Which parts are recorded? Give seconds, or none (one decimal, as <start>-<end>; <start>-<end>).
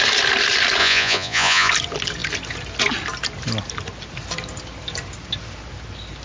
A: 0.0-0.8; 1.7-6.2